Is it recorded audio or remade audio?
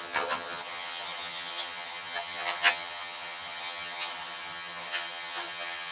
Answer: remade